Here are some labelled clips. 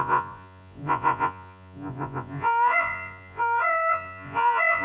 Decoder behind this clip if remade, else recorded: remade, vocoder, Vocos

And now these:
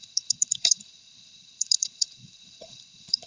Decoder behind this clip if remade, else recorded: remade, codec, HILCodec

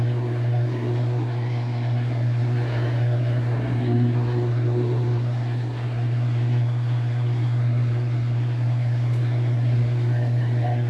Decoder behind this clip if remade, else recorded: remade, codec, SNAC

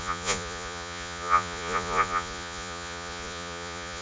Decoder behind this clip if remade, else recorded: remade, vocoder, Vocos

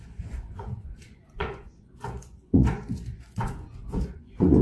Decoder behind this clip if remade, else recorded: remade, vocoder, Vocos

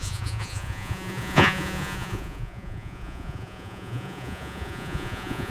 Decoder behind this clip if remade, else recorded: remade, vocoder, Vocos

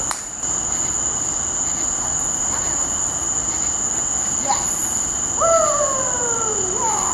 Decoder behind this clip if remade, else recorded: recorded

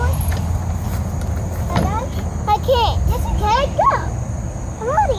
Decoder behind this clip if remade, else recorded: recorded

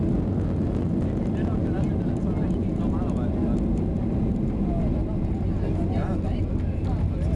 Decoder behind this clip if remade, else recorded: recorded